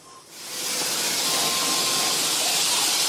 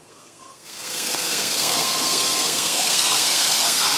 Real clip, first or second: first